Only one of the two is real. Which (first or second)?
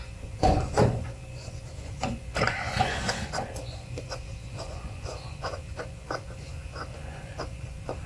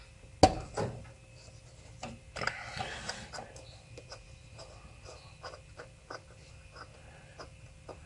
second